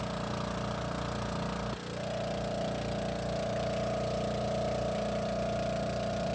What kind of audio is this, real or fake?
real